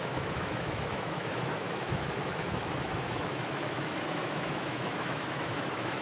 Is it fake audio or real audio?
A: fake